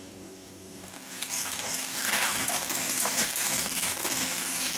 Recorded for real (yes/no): no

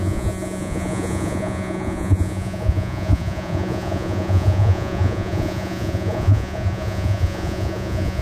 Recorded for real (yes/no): no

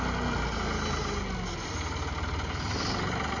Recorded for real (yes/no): yes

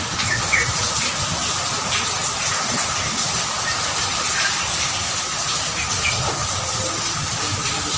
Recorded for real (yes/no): yes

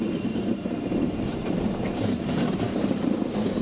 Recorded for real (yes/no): no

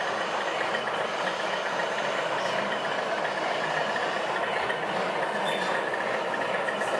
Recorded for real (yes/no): yes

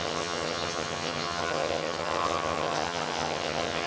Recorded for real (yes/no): no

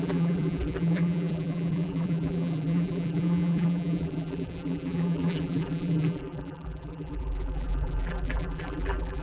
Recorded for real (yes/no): no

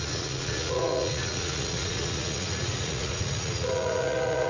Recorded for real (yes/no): no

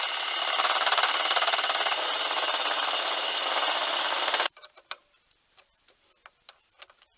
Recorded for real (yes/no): yes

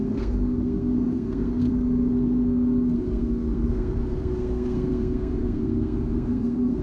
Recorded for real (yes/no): no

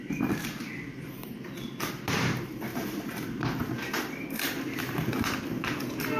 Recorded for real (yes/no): yes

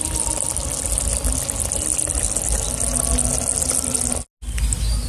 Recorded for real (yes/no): yes